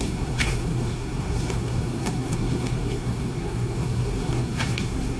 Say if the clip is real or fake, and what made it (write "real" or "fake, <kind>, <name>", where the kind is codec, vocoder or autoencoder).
fake, codec, SNAC